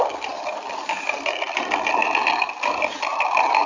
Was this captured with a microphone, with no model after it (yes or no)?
yes